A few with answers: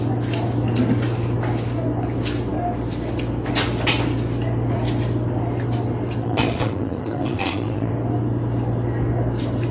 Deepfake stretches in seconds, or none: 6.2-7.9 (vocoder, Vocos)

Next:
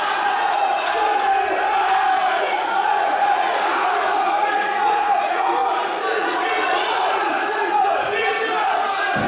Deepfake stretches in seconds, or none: 0.0-0.9 (vocoder, Vocos); 2.3-5.6; 6.1-8.3

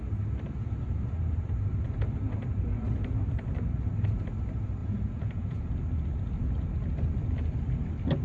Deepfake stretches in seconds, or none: 4.8-5.7 (vocoder, Vocos)

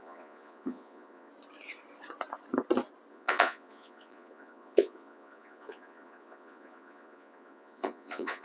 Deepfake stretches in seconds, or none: 0.0-1.3 (vocoder, Vocos); 3.1-8.4